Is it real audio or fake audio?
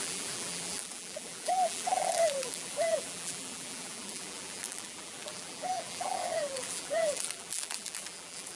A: fake